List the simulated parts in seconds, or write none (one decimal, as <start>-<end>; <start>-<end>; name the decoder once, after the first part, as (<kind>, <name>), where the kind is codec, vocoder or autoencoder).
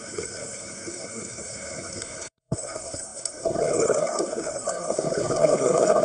0.0-6.0 (codec, SNAC)